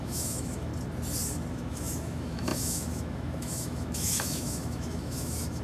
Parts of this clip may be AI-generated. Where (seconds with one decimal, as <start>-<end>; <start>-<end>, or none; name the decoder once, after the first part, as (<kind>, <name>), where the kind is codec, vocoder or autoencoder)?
0.0-0.7 (autoencoder, DAC-VAE); 1.5-5.6